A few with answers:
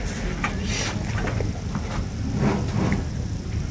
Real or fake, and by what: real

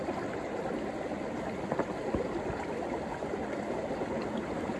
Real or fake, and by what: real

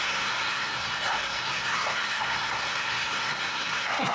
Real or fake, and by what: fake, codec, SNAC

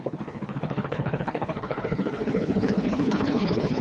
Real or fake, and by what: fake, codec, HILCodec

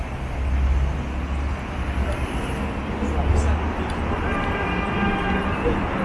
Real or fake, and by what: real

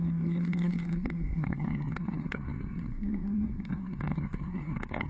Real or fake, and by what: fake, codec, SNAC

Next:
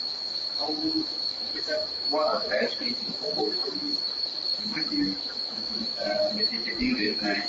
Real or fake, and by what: fake, codec, DAC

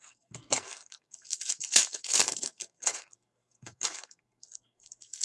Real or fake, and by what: fake, codec, SNAC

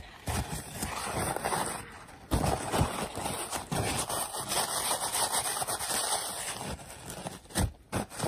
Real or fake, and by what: real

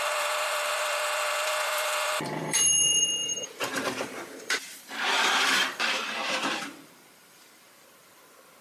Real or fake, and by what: fake, vocoder, BigVGAN v2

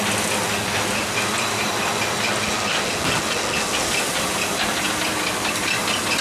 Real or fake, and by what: real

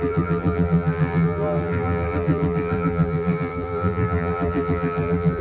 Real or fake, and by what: fake, vocoder, BigVGAN v2